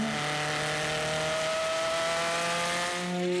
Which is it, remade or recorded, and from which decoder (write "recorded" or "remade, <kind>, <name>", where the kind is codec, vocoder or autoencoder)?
recorded